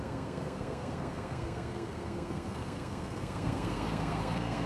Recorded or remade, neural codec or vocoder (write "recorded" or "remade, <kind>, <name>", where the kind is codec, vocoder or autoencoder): remade, codec, SNAC